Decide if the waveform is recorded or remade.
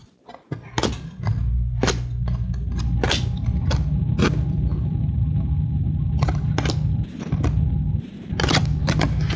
recorded